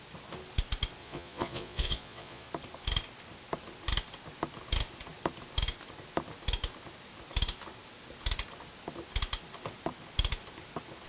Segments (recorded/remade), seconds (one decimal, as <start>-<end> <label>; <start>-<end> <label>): 0.0-1.0 recorded; 1.0-2.5 remade; 2.5-11.1 recorded